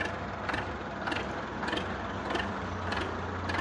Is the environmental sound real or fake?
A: real